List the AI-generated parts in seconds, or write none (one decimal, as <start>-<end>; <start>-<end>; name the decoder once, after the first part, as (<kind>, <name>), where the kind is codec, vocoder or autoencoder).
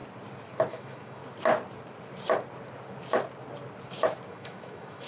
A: 0.7-1.2 (autoencoder, DAC-VAE); 4.3-5.1